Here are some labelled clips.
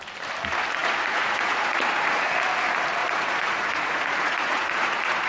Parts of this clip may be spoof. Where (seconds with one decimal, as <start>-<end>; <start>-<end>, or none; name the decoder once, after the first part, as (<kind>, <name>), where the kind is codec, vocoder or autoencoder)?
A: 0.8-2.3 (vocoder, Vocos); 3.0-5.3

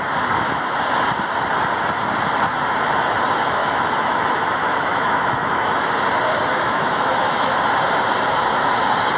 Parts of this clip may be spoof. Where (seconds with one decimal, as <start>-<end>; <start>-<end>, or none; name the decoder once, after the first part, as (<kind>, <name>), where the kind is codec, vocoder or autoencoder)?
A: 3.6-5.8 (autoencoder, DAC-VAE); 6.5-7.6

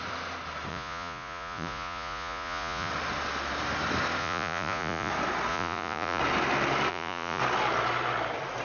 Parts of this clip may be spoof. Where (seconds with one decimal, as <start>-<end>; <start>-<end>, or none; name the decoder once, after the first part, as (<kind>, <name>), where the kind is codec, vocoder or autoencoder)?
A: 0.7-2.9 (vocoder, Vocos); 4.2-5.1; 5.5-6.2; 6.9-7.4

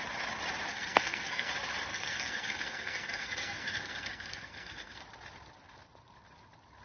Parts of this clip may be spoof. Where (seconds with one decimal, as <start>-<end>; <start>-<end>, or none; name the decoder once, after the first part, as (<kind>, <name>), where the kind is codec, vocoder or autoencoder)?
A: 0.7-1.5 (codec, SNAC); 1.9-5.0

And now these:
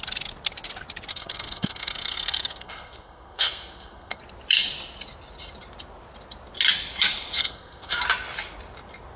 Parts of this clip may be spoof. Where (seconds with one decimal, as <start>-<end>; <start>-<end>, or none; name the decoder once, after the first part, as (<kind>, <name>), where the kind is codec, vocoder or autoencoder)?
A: 1.1-4.2 (codec, SNAC); 7.4-8.0